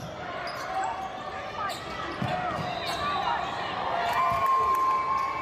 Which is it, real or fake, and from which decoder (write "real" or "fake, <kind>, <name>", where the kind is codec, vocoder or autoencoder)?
real